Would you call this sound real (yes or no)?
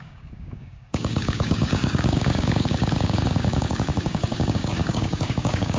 no